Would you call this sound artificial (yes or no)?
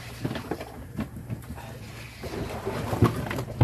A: yes